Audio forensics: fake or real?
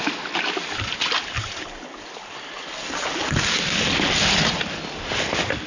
real